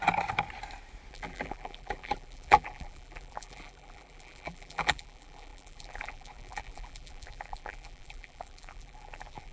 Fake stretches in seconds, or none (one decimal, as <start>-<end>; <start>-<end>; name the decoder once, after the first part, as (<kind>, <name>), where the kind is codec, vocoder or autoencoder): 1.1-9.5 (vocoder, BigVGAN v2)